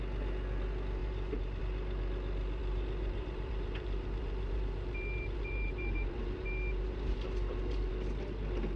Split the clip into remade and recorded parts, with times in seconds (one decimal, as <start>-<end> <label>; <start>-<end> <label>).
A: 0.0-1.0 recorded; 1.0-1.6 remade; 1.6-2.6 recorded; 2.6-7.9 remade; 7.9-8.8 recorded